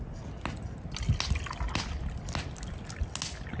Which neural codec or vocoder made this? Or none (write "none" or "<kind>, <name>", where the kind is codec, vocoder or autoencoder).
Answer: none